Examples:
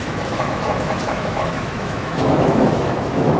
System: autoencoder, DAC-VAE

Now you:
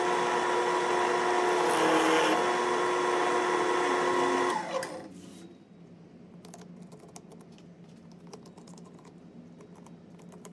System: none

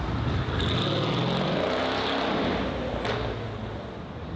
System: none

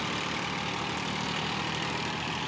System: none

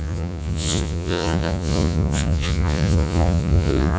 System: vocoder, Vocos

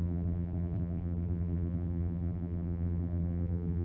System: vocoder, BigVGAN v2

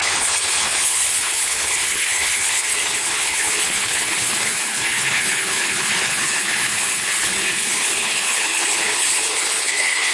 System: codec, HILCodec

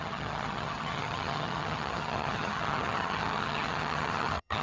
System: vocoder, HiFi-GAN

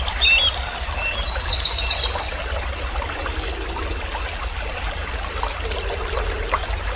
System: none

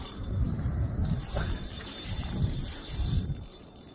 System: vocoder, BigVGAN v2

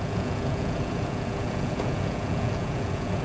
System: vocoder, Vocos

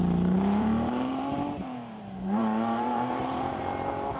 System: vocoder, BigVGAN v2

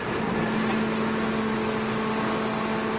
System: none